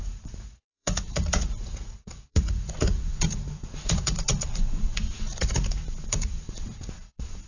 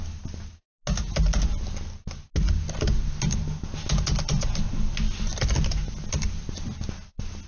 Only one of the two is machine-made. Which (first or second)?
first